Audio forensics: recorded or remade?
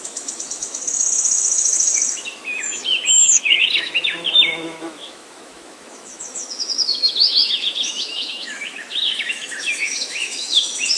remade